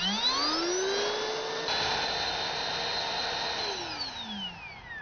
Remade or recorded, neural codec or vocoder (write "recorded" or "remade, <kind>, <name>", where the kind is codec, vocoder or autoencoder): recorded